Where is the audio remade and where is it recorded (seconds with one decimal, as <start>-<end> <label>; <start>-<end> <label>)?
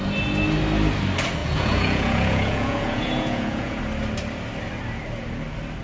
0.0-1.4 recorded; 1.4-3.8 remade; 3.8-5.8 recorded